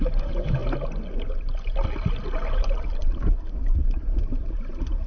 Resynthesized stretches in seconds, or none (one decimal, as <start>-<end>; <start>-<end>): 0.0-0.6; 3.7-5.1